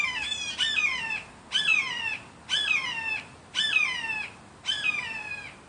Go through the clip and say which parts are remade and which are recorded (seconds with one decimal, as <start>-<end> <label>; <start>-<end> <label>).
0.0-5.7 recorded